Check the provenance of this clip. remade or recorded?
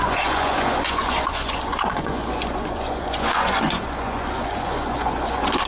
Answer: remade